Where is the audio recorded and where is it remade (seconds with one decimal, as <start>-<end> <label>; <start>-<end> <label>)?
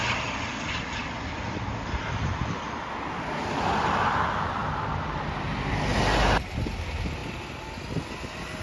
0.0-8.6 recorded